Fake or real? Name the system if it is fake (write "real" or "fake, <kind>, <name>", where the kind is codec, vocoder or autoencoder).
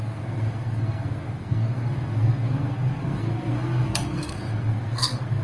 fake, codec, SNAC